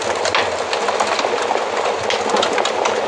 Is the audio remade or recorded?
recorded